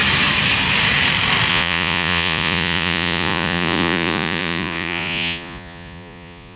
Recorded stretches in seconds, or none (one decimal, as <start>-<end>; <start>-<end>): 0.0-1.5